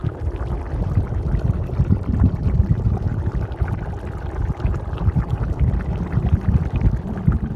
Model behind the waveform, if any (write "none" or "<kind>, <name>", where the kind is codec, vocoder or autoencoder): none